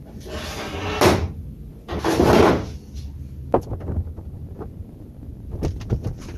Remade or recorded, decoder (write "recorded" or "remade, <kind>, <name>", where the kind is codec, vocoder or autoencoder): recorded